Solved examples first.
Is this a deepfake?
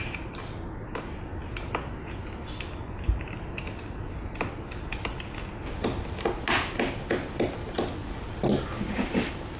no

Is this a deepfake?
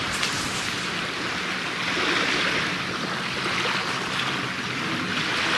no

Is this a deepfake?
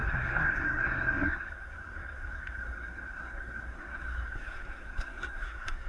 yes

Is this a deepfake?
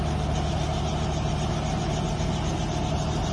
no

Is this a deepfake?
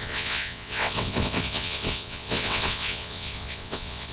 yes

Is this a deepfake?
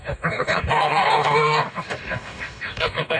yes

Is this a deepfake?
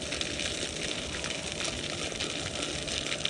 no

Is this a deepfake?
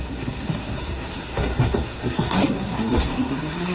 yes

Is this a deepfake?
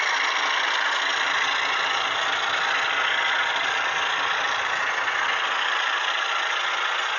no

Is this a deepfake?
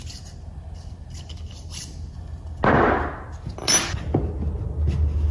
no